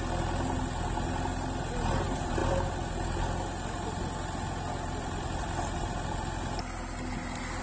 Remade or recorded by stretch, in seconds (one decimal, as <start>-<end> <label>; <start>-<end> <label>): 0.0-7.6 recorded